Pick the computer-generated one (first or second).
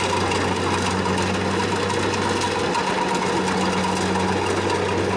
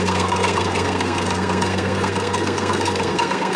second